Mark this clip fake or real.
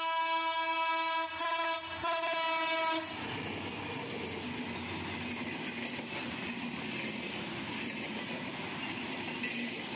real